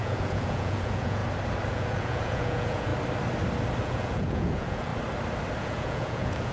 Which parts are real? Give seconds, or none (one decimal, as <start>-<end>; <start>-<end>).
1.2-1.7; 2.9-3.8; 4.9-5.6